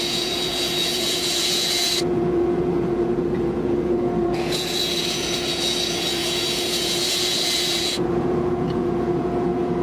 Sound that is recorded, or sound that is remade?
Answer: remade